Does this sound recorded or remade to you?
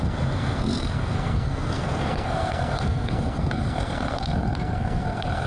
remade